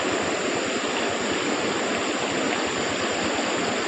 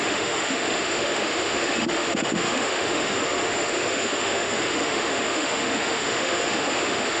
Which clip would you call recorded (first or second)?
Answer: first